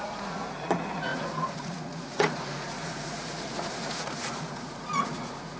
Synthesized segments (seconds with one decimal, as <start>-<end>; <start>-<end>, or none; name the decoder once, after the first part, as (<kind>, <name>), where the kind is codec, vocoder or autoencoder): 0.0-5.6 (vocoder, Vocos)